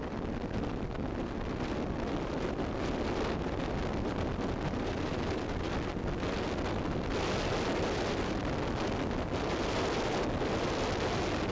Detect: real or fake real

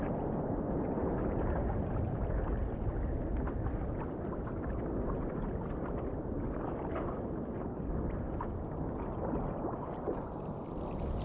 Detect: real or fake real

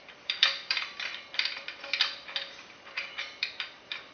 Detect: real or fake fake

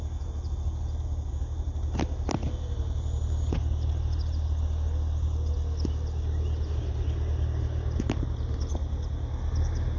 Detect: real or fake real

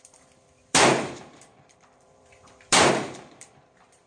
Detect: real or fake fake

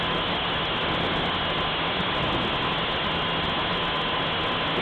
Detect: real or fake real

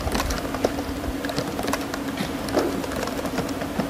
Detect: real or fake real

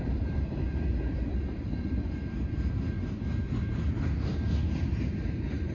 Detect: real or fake fake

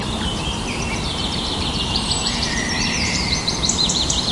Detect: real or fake fake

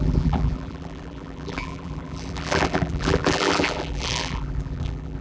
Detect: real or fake fake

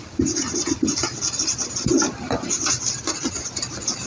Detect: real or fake real